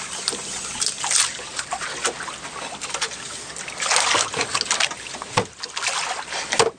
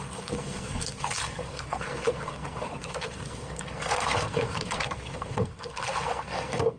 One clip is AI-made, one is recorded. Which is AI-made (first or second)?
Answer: second